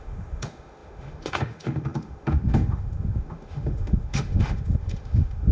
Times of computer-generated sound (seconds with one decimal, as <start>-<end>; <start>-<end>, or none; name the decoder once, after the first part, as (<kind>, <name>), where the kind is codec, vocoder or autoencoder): 0.0-5.5 (autoencoder, DAC-VAE)